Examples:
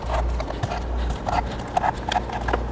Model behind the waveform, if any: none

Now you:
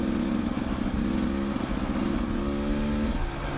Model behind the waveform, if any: none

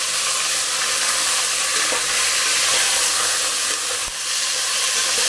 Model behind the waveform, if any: none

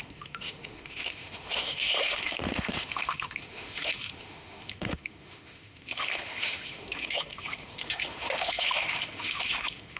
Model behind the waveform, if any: autoencoder, DAC-VAE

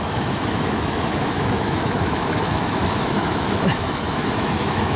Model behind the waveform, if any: autoencoder, DAC-VAE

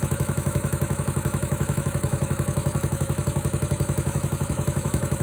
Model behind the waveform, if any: autoencoder, DAC-VAE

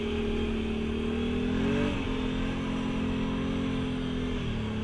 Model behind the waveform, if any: none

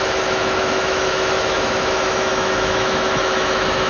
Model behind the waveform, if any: autoencoder, DAC-VAE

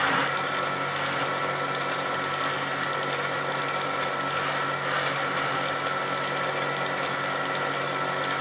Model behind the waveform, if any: none